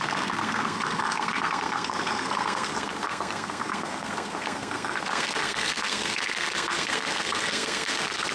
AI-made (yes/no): yes